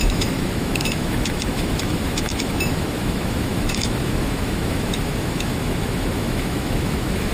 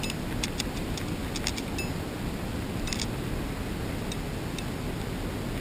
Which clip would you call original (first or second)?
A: second